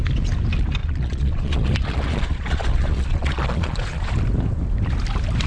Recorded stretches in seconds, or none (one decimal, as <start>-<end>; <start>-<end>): 0.0-0.8; 4.1-5.5